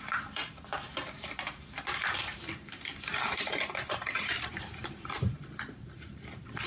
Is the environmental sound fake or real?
fake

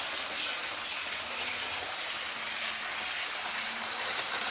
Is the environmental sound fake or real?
real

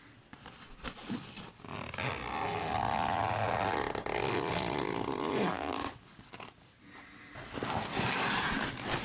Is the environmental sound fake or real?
real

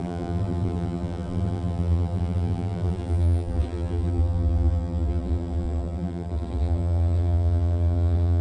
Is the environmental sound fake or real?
fake